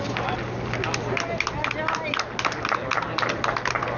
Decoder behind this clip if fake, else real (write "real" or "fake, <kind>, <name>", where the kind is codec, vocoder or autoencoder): real